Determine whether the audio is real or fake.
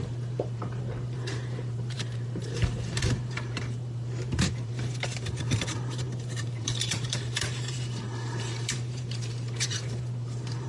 fake